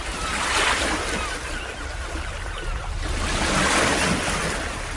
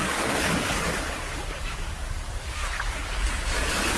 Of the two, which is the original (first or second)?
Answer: first